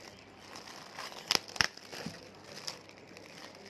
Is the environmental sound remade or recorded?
recorded